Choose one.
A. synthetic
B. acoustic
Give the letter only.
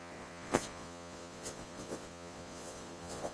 A